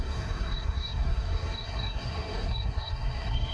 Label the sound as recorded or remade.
remade